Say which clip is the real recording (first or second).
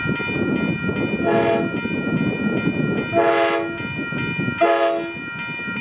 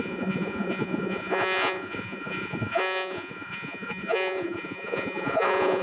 first